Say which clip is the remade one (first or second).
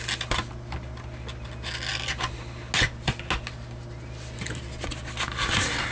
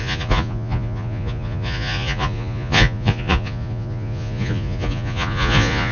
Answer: second